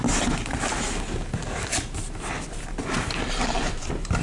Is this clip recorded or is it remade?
recorded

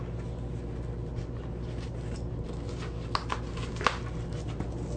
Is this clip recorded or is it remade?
recorded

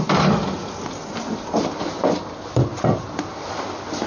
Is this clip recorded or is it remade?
recorded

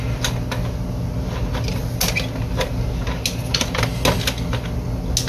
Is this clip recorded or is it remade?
recorded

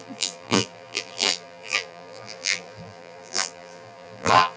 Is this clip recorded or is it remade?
remade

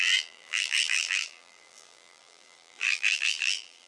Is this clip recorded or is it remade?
remade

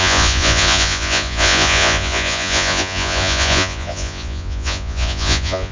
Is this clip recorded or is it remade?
remade